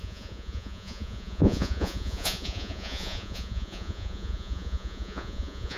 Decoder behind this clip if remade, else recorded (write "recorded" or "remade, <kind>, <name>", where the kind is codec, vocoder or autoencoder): remade, vocoder, Vocos